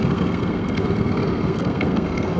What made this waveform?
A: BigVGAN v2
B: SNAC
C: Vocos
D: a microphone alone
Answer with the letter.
B